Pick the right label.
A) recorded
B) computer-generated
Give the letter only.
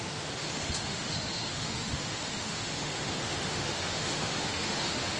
B